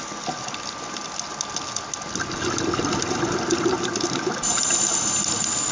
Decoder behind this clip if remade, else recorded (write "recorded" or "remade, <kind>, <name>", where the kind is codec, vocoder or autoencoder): recorded